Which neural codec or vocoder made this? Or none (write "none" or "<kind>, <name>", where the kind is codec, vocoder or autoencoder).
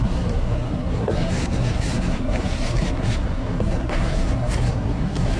codec, SNAC